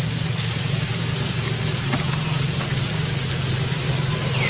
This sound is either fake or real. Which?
real